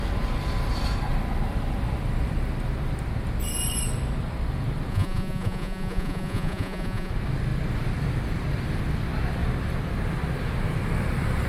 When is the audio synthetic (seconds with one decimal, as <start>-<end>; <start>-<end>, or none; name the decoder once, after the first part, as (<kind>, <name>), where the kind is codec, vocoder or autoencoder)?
4.9-7.1 (vocoder, Vocos)

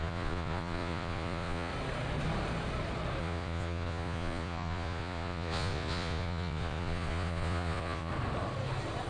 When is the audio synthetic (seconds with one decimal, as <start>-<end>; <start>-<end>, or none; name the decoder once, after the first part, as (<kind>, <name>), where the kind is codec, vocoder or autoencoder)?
0.0-1.7 (vocoder, Vocos); 3.2-8.1

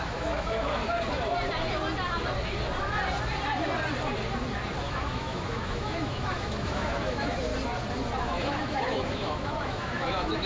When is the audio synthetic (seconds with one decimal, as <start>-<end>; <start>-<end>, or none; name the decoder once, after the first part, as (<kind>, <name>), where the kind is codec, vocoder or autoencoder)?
0.0-0.8 (autoencoder, DAC-VAE); 4.8-7.5; 8.2-10.5